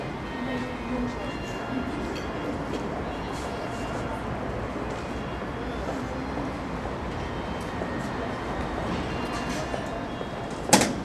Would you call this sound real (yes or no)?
yes